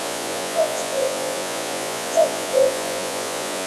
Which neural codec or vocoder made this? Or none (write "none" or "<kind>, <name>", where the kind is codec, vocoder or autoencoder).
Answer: vocoder, Vocos